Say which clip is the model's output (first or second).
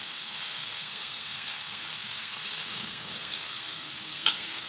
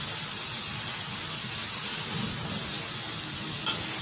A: first